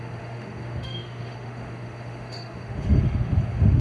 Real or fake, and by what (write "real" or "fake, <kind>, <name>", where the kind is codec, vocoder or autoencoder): fake, autoencoder, DAC-VAE